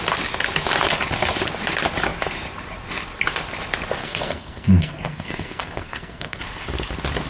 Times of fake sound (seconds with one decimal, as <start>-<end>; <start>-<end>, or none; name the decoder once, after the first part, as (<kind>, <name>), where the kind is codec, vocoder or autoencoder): 4.0-6.4 (codec, SNAC)